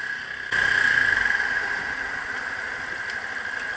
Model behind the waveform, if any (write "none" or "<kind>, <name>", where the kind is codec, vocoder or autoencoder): none